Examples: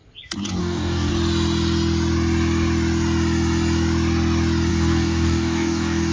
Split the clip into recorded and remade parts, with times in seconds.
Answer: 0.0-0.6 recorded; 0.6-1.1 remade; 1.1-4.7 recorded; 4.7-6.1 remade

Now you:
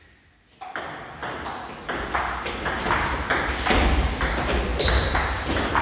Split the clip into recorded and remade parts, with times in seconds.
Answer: 0.0-5.8 recorded

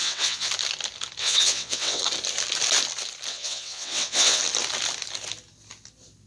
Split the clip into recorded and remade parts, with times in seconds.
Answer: 0.0-0.5 remade; 0.5-1.2 recorded; 1.2-2.0 remade; 2.0-3.3 recorded; 3.3-4.4 remade; 4.4-6.3 recorded

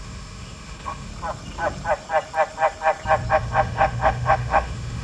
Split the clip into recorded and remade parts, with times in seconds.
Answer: 0.0-1.1 remade; 1.1-3.3 recorded; 3.3-5.0 remade

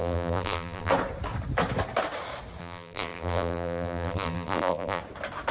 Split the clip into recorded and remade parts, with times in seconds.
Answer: 0.0-0.9 remade; 0.9-2.6 recorded; 2.6-5.0 remade; 5.0-5.5 recorded

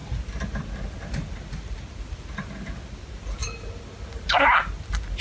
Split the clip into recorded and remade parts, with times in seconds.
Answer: 0.0-5.2 recorded

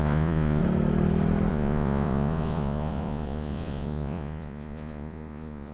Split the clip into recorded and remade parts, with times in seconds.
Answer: 0.0-0.6 remade; 0.6-1.5 recorded; 1.5-5.7 remade

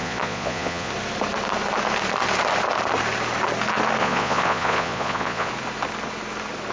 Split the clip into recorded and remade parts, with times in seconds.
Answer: 0.0-0.9 remade; 0.9-4.0 recorded; 4.0-5.5 remade; 5.5-6.7 recorded